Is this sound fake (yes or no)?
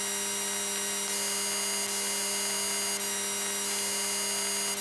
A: no